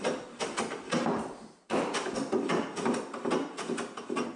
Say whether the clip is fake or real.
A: real